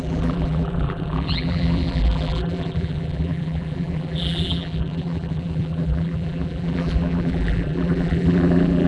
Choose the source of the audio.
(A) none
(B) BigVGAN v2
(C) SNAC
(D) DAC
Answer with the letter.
B